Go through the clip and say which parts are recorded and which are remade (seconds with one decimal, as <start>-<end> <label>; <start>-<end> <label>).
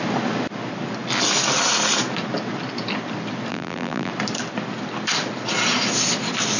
0.0-3.5 recorded; 3.5-4.1 remade; 4.1-6.6 recorded